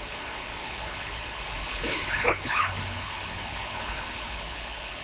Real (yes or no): no